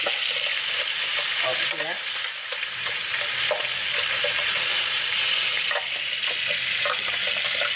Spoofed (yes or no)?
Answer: no